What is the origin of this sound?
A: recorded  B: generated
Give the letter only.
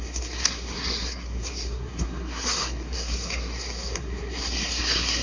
B